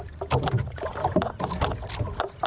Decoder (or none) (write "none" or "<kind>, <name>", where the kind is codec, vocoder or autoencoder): none